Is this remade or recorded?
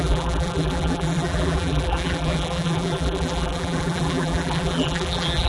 remade